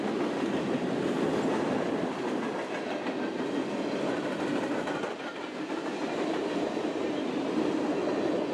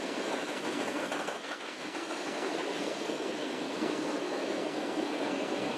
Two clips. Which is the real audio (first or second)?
first